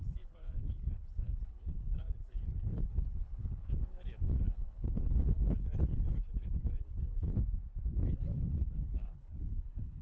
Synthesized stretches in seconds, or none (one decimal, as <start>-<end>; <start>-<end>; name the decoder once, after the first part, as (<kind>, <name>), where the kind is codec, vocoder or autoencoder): 0.0-7.3 (codec, HILCodec); 8.0-10.0